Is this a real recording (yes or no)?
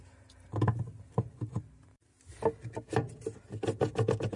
yes